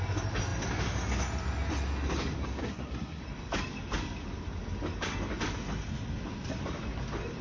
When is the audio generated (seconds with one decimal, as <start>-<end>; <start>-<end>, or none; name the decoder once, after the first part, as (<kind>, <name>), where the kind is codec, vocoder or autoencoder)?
2.6-3.2 (codec, SNAC)